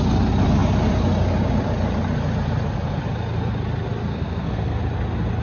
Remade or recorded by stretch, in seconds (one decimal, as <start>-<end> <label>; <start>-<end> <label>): 0.0-4.1 recorded; 4.1-4.8 remade; 4.8-5.4 recorded